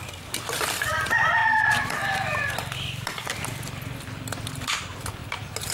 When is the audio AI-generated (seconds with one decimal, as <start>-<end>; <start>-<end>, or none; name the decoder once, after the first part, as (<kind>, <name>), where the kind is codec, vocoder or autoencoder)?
0.0-5.2 (vocoder, BigVGAN v2)